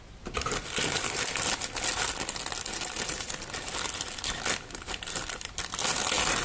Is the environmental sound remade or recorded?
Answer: recorded